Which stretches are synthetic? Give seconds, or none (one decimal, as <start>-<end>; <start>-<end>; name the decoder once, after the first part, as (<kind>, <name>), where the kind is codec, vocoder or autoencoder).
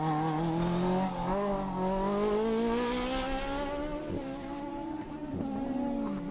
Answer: 4.2-5.3 (vocoder, BigVGAN v2)